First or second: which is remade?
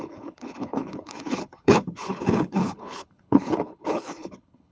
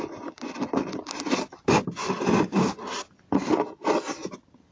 first